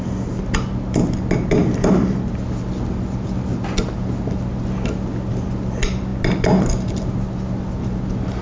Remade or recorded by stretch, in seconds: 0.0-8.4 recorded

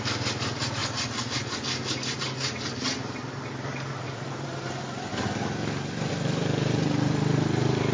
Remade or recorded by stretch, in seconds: 0.0-0.8 remade; 0.8-2.2 recorded; 2.2-5.1 remade; 5.1-6.1 recorded; 6.1-7.9 remade

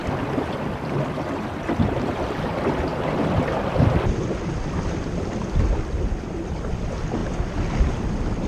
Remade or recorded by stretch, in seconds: 0.0-1.5 recorded; 1.5-7.2 remade; 7.2-8.1 recorded; 8.1-8.5 remade

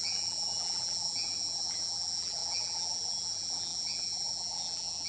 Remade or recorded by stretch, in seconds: 0.0-5.1 remade

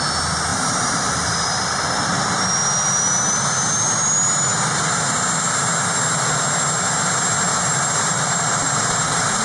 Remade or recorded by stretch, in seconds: 0.0-0.5 recorded; 0.5-1.9 remade; 1.9-7.5 recorded; 7.5-9.4 remade

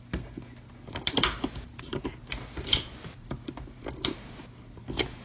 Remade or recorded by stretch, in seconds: 0.0-1.7 recorded; 1.7-4.8 remade; 4.8-5.2 recorded

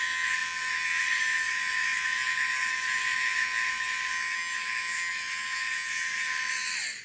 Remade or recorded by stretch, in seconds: 0.0-7.0 recorded